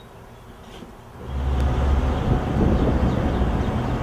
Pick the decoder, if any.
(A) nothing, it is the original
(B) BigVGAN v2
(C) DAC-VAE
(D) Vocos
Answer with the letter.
A